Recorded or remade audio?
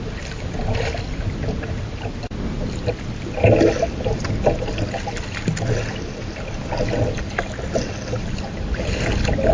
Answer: recorded